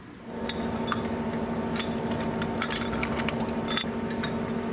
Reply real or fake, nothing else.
real